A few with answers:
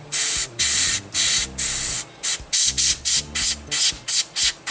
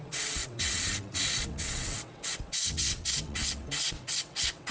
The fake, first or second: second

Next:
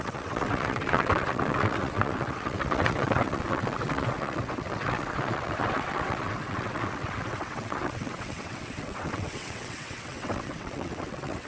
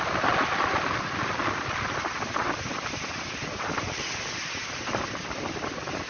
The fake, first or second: first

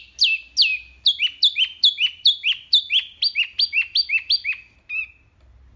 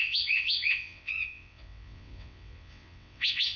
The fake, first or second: second